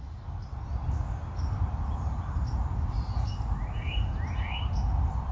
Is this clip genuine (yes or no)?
yes